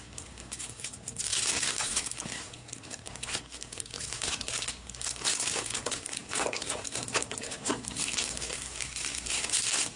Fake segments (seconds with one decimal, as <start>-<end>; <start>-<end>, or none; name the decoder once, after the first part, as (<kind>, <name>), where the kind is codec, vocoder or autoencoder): 0.0-10.0 (codec, SNAC)